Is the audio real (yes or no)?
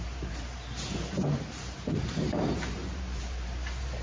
no